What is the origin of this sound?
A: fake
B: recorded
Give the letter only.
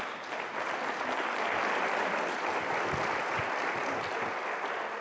B